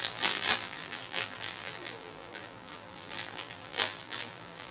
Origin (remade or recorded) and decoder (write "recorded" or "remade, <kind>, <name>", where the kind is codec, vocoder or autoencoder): remade, vocoder, BigVGAN v2